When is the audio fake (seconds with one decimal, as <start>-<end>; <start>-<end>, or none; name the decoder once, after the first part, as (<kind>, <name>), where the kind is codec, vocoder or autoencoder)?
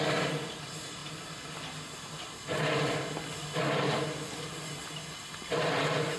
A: none